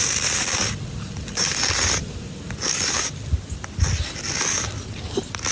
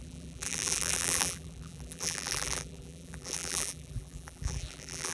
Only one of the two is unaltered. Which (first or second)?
first